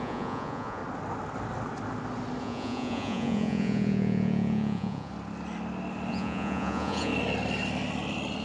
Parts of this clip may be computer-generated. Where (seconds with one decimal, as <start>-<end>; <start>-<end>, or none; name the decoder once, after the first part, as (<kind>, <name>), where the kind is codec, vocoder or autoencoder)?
0.0-0.8 (vocoder, Vocos); 2.4-5.1; 6.1-7.1